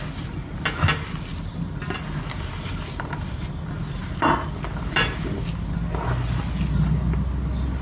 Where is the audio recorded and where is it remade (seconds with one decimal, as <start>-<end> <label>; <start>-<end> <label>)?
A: 0.0-7.8 recorded